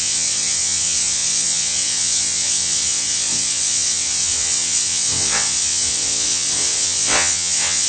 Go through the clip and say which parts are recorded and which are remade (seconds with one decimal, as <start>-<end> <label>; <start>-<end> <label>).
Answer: 0.0-7.9 remade